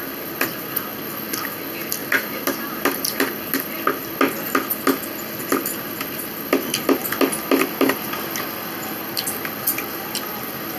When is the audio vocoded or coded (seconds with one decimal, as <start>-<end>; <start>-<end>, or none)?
2.0-3.2